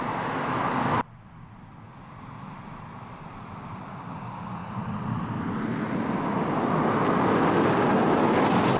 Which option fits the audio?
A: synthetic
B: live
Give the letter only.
B